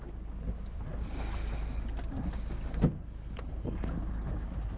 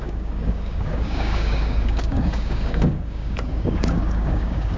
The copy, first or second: second